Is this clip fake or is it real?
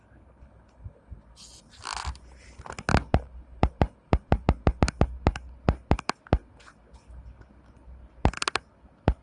real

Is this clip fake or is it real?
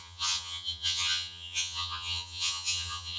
fake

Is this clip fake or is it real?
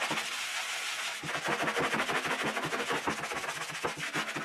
real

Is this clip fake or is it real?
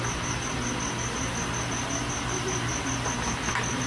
real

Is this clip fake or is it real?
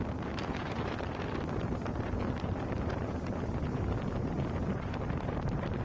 fake